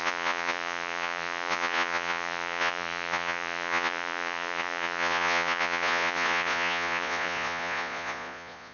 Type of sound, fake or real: fake